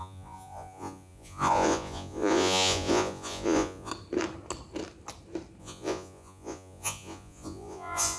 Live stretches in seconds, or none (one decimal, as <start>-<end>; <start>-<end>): 3.9-5.6